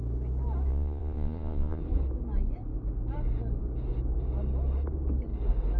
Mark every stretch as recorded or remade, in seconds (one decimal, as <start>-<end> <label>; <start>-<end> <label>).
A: 0.0-0.7 recorded; 0.7-1.8 remade; 1.8-5.8 recorded